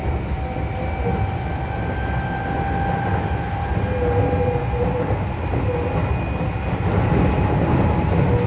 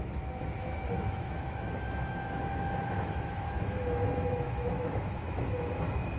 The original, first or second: first